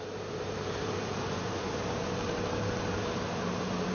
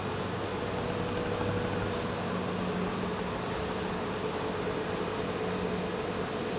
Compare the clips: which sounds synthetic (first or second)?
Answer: first